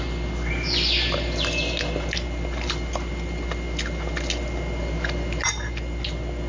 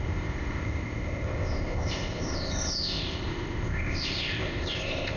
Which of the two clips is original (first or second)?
first